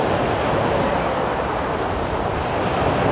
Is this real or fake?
real